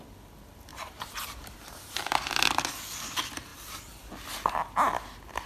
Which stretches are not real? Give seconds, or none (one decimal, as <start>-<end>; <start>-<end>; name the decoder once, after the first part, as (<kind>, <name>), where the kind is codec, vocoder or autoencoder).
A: 0.7-2.6 (vocoder, BigVGAN v2)